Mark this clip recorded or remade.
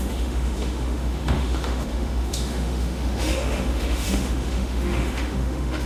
remade